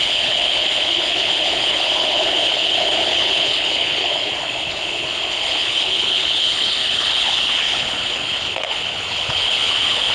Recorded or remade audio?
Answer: remade